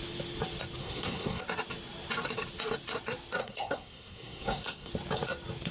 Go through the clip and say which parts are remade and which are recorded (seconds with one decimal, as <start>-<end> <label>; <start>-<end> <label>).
0.0-0.8 recorded; 0.8-1.4 remade; 1.4-3.4 recorded; 3.4-4.9 remade; 4.9-5.7 recorded